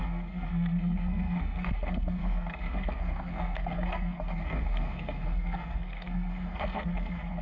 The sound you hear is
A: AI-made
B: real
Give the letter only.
A